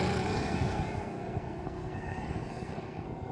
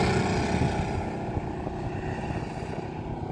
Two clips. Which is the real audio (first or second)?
second